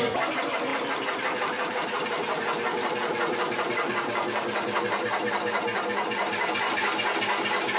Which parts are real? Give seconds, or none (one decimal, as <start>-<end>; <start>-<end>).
none